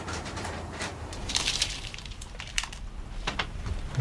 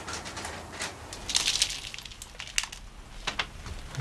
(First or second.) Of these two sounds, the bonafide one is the second